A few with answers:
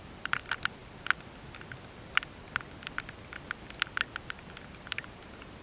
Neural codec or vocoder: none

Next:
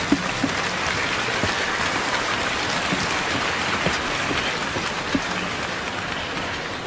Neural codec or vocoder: none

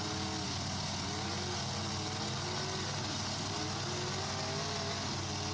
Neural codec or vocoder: none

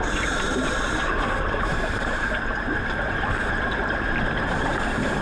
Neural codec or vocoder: vocoder, BigVGAN v2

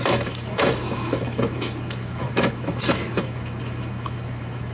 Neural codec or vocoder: autoencoder, DAC-VAE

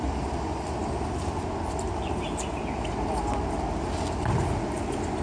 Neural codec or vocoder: none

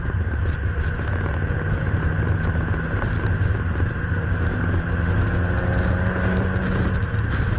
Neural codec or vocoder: none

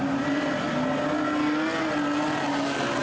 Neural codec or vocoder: none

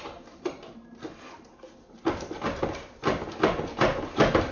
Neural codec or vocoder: none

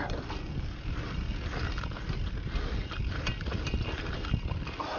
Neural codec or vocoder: none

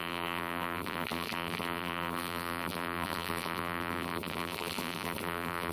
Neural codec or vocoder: vocoder, BigVGAN v2